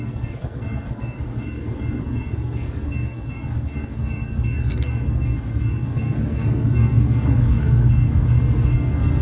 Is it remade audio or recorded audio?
remade